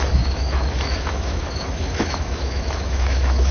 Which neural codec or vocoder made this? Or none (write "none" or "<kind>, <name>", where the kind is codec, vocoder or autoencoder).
autoencoder, DAC-VAE